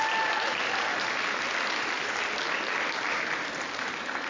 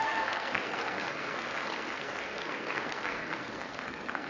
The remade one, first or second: second